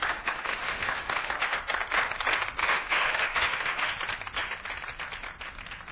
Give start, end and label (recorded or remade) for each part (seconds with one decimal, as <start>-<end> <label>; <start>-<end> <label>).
0.0-1.6 remade; 1.6-2.6 recorded; 2.6-3.9 remade; 3.9-5.9 recorded